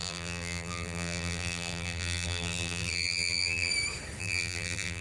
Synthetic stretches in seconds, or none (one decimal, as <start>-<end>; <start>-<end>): 0.0-3.7; 4.2-5.0